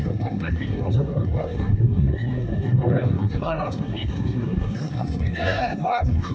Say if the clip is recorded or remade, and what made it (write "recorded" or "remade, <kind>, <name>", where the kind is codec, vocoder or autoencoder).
remade, codec, SNAC